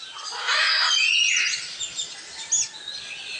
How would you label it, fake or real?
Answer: real